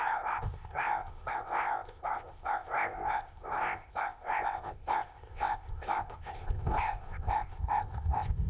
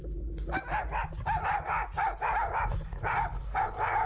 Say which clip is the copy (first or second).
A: first